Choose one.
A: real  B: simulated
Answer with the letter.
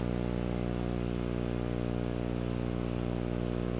A